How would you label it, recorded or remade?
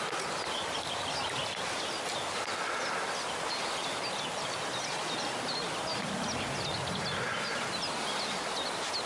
recorded